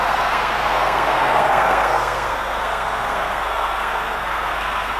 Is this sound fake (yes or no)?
yes